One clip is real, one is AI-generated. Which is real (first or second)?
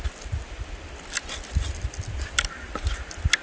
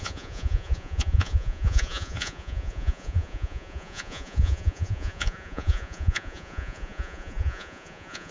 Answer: first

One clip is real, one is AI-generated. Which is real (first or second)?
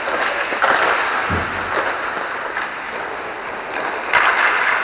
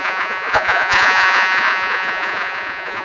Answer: first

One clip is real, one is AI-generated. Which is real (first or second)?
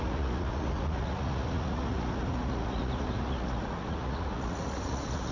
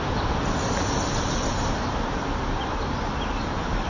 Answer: second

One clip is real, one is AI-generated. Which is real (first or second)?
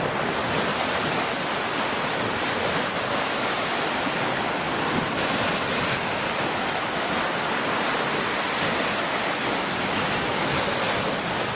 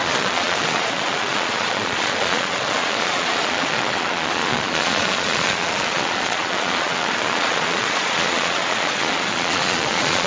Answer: first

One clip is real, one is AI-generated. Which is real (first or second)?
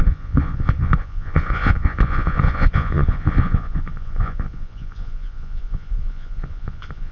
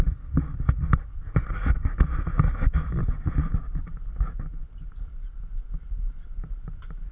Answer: second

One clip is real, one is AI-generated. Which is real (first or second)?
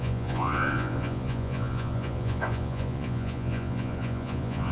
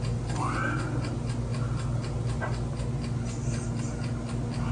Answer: second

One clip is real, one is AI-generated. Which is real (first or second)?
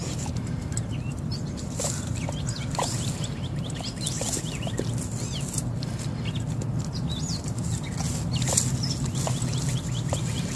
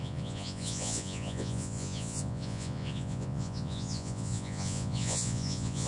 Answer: first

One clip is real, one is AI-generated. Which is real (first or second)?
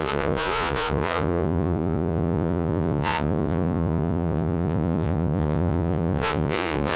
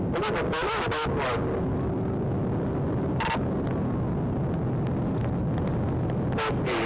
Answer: second